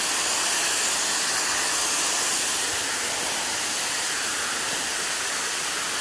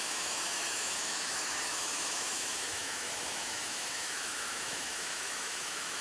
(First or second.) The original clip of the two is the first